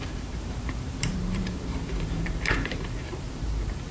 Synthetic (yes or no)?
yes